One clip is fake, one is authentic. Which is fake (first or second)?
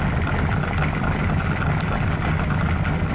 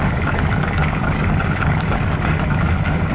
second